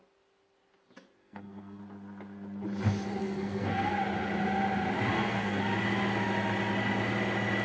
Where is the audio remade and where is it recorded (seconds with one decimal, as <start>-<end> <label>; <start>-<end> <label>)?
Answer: 0.0-1.2 recorded; 1.2-1.8 remade; 1.8-3.2 recorded; 3.2-3.9 remade; 3.9-5.1 recorded; 5.1-5.6 remade; 5.6-7.6 recorded